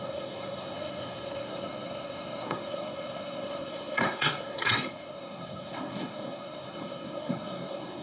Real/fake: fake